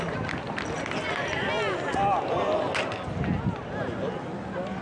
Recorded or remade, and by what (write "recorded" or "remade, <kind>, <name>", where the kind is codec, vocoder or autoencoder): recorded